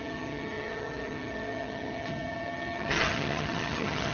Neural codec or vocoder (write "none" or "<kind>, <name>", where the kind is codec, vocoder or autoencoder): vocoder, HiFi-GAN